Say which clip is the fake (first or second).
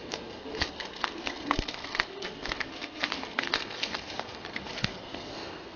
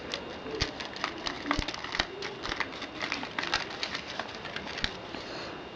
first